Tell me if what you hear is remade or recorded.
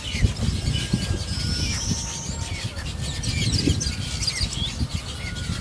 recorded